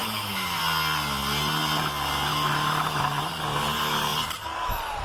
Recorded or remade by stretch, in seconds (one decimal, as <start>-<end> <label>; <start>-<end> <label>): 0.0-0.6 remade; 0.6-2.3 recorded; 2.3-3.3 remade; 3.3-5.0 recorded